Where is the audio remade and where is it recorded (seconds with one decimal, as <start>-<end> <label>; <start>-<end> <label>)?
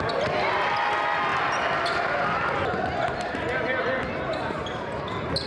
0.0-5.5 recorded